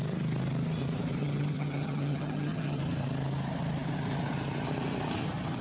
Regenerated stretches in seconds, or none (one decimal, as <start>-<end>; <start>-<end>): 1.2-2.8